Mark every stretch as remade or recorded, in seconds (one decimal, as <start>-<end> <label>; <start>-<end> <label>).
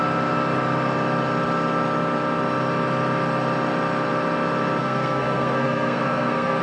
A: 0.0-4.8 recorded; 4.8-6.6 remade